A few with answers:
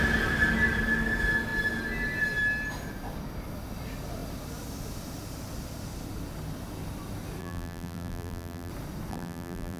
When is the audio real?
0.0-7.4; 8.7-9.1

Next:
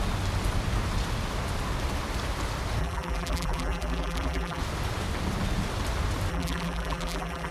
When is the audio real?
0.0-2.8; 4.6-6.3